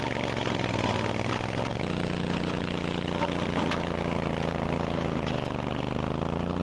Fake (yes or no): no